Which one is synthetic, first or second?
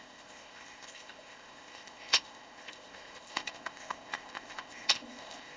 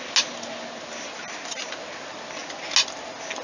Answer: first